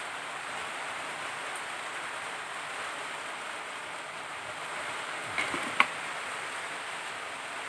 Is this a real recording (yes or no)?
yes